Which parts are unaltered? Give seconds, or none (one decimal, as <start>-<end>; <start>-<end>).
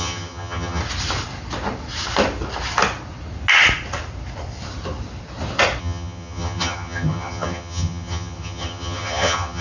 0.8-5.8